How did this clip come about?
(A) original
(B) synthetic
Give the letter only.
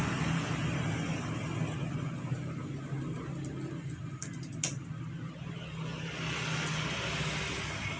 A